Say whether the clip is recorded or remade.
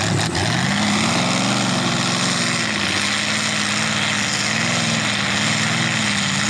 recorded